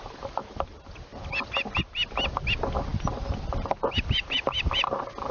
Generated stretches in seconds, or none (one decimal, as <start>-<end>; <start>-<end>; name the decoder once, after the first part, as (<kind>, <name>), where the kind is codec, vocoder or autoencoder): none